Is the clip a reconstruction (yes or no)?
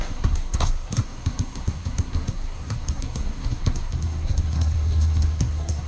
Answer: yes